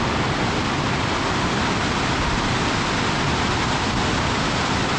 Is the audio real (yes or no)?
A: yes